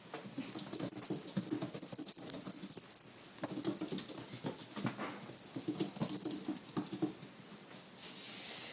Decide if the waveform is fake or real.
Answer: real